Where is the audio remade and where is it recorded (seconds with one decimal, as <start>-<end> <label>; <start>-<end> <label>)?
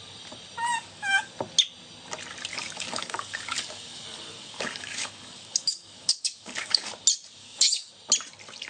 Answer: 0.0-0.7 recorded; 0.7-1.3 remade; 1.3-2.5 recorded; 2.5-6.9 remade; 6.9-7.4 recorded; 7.4-7.9 remade; 7.9-8.7 recorded